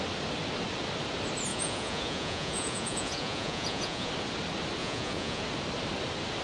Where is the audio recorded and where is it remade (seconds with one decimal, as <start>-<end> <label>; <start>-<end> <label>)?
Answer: 0.0-1.5 recorded; 1.5-4.1 remade; 4.1-4.8 recorded; 4.8-5.4 remade; 5.4-6.4 recorded